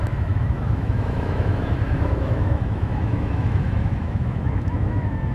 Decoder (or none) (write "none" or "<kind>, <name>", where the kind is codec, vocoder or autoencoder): autoencoder, DAC-VAE